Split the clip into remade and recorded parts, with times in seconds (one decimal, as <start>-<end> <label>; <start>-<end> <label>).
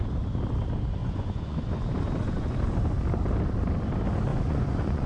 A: 0.0-1.0 recorded; 1.0-1.7 remade; 1.7-2.2 recorded; 2.2-2.8 remade; 2.8-4.3 recorded; 4.3-5.1 remade